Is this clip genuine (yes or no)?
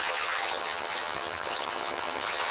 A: no